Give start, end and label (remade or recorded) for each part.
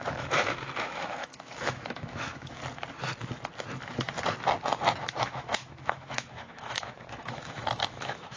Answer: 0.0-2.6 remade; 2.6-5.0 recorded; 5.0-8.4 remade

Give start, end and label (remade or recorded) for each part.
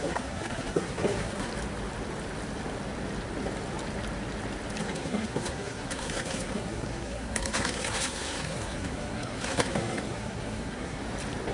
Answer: 0.0-1.5 remade; 1.5-4.8 recorded; 4.8-11.0 remade; 11.0-11.5 recorded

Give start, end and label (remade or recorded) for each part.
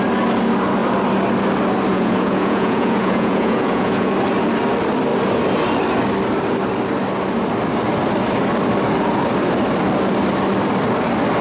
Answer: 0.0-1.9 recorded; 1.9-4.1 remade; 4.1-11.4 recorded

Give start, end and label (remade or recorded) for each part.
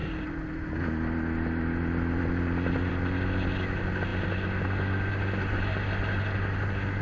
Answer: 0.0-7.0 recorded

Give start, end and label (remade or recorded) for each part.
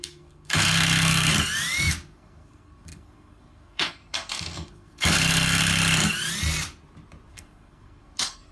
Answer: 0.0-1.3 remade; 1.3-1.9 recorded; 1.9-5.6 remade; 5.6-7.3 recorded; 7.3-8.5 remade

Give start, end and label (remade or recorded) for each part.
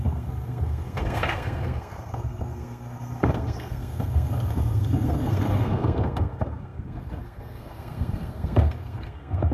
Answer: 0.0-9.5 remade